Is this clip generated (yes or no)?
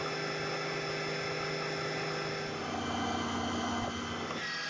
no